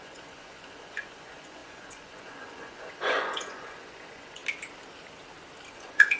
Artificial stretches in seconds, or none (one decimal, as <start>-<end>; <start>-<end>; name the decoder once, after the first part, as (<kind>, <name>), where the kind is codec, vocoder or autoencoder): 0.0-4.4 (vocoder, Vocos); 5.7-6.2